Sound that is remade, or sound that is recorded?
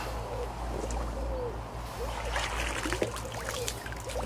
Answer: recorded